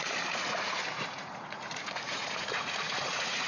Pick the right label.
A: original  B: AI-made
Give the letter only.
B